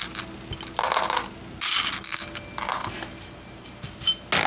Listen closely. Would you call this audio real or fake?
real